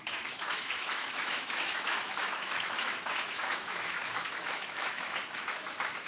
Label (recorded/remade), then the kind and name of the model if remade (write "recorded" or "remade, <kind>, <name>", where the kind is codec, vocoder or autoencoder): remade, autoencoder, DAC-VAE